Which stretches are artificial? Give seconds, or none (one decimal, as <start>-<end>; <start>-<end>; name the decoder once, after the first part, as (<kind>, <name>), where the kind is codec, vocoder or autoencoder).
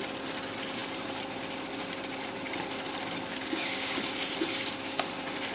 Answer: 3.4-4.0 (codec, DAC)